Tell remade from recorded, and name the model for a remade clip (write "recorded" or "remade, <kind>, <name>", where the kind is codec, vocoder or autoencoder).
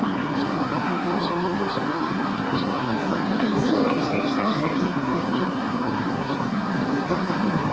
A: remade, codec, SNAC